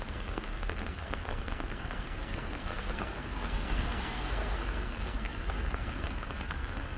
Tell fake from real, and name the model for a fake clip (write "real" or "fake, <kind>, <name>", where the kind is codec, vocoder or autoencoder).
fake, codec, SNAC